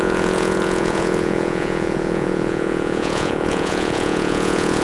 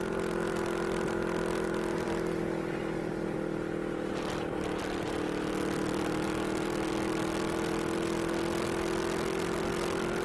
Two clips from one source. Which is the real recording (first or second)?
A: second